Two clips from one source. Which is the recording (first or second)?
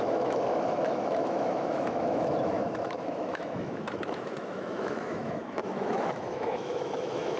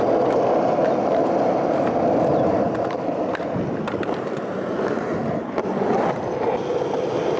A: second